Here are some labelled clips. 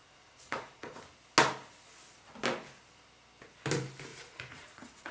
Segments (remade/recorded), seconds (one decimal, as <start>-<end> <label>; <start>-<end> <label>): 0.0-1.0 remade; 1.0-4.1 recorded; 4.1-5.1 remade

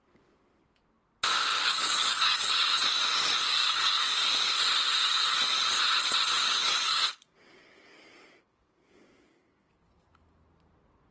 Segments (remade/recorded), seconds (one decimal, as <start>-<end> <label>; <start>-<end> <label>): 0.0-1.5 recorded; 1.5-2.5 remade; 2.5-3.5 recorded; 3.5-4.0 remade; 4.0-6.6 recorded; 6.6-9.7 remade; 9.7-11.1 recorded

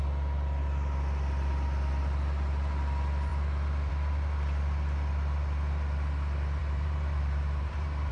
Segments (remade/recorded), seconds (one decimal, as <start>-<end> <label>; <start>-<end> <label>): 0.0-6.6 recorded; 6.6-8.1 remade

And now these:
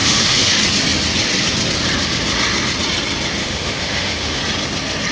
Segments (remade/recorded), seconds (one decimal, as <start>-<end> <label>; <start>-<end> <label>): 0.0-0.5 remade; 0.5-3.4 recorded; 3.4-4.4 remade; 4.4-5.1 recorded

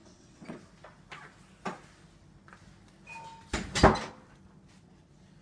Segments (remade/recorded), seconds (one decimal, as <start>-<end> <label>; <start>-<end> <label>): 0.0-0.6 remade; 0.6-5.4 recorded

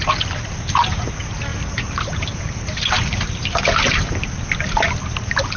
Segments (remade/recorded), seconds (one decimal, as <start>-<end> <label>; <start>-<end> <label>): 0.0-5.6 recorded

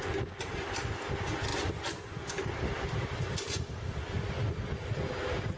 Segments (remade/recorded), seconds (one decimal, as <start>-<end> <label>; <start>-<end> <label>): 0.0-5.6 recorded